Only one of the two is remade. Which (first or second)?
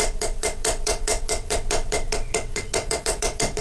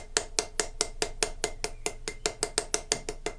first